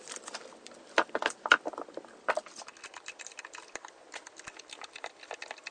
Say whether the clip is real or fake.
real